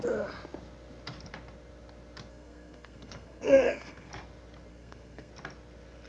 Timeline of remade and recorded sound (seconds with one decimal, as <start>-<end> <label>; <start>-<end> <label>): 0.0-2.3 recorded; 2.3-4.1 remade; 4.1-4.7 recorded; 4.7-5.3 remade; 5.3-6.1 recorded